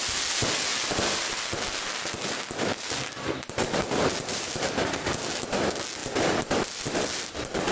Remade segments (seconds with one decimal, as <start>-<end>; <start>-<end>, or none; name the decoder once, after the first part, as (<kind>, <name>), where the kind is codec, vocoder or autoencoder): 0.7-4.6 (vocoder, BigVGAN v2); 6.0-7.7